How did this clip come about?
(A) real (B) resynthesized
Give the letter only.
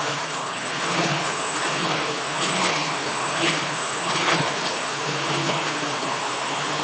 B